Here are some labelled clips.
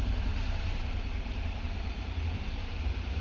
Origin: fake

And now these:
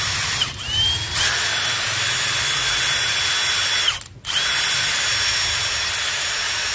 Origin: real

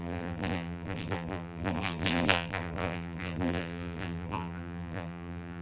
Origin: fake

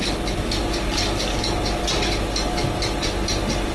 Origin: real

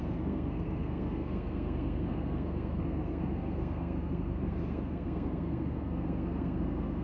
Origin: fake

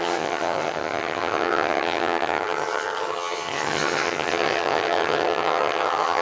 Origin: fake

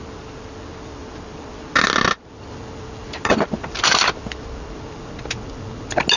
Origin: real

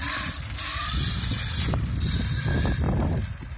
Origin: real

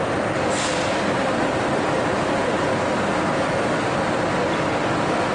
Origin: real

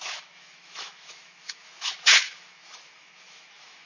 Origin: fake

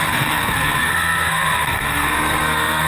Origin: fake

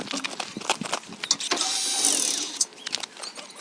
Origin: real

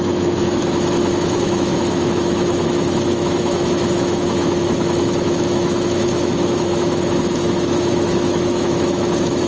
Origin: fake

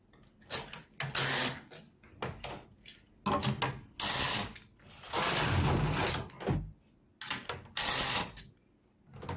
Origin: real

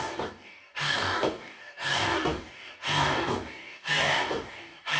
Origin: fake